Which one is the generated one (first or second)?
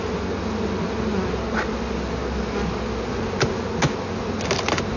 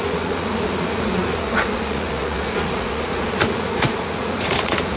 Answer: second